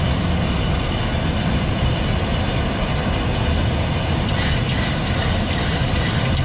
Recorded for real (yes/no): yes